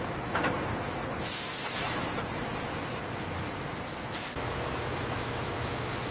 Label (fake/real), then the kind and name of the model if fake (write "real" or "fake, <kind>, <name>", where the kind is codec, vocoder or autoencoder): real